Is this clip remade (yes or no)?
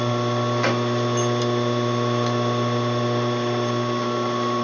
no